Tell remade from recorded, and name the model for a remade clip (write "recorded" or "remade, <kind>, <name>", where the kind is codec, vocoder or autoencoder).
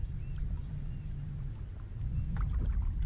recorded